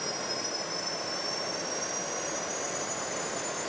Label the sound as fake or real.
real